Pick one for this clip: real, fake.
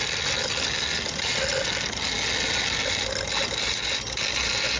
real